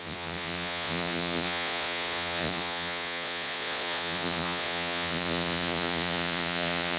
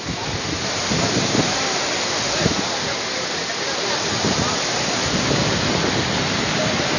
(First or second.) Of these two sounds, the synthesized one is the first